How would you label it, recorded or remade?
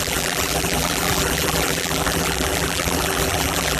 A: remade